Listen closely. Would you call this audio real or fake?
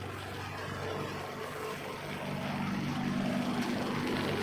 real